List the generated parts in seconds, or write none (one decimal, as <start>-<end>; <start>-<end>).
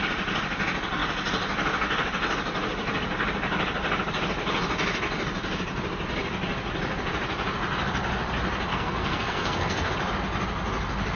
8.7-9.9